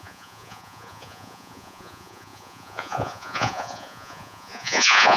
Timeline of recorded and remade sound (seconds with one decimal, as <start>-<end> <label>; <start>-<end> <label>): 0.0-5.2 remade